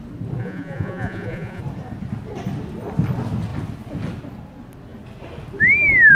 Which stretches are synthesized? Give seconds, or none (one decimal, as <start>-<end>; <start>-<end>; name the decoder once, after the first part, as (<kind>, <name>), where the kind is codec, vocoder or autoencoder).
0.4-1.6 (vocoder, Vocos)